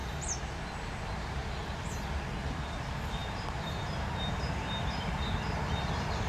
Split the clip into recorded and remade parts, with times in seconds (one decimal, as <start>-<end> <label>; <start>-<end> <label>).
0.0-0.7 recorded; 0.7-1.4 remade; 1.4-2.4 recorded; 2.4-6.3 remade